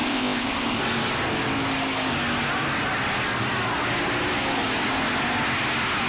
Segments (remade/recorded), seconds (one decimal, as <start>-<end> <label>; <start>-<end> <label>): 0.0-0.8 remade; 0.8-6.1 recorded